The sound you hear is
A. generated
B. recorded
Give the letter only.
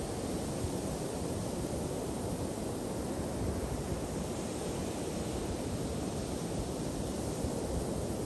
B